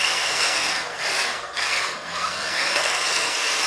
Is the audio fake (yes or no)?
yes